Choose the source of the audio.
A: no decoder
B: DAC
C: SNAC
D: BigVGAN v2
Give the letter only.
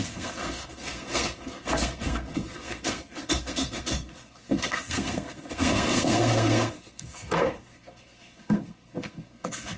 C